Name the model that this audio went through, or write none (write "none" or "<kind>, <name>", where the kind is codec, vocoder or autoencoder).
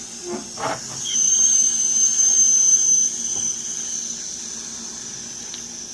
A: none